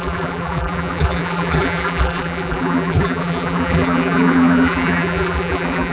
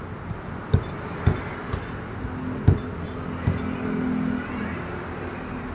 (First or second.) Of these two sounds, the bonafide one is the second